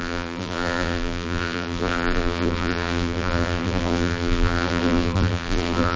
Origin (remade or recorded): remade